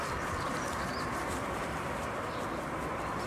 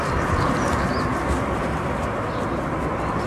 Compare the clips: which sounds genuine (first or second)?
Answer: second